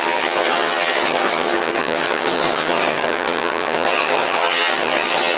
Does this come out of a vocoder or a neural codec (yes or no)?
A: yes